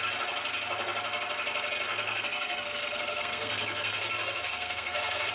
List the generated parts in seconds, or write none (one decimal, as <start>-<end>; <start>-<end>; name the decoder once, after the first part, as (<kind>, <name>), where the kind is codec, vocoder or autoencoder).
1.9-5.3 (codec, SNAC)